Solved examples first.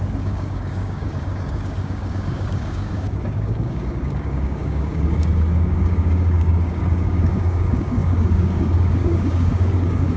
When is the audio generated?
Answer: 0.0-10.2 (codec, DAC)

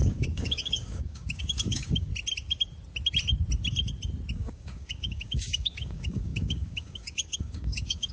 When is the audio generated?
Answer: 0.0-2.1 (codec, DAC); 4.3-8.1

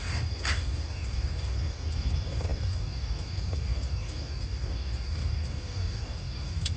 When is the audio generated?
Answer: 0.0-6.8 (codec, DAC)

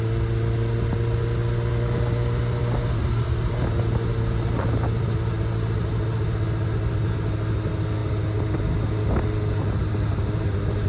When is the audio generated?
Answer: none

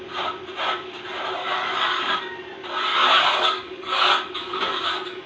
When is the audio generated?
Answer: 1.4-2.2 (codec, DAC); 2.9-5.3

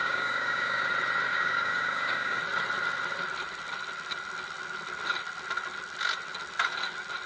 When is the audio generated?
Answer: 0.0-0.9 (codec, DAC); 1.3-2.4

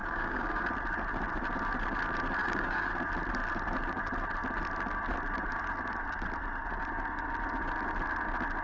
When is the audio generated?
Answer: 0.0-0.6 (codec, DAC); 2.4-2.9

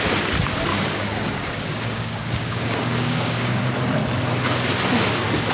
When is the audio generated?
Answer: 0.7-3.6 (codec, DAC)